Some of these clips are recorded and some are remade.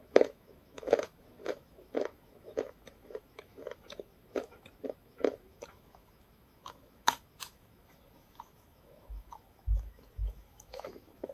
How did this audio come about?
remade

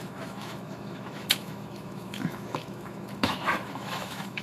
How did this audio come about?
remade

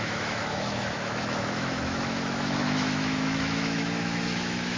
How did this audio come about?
remade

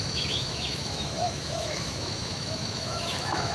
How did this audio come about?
remade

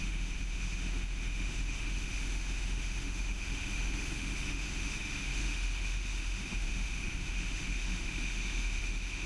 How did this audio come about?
remade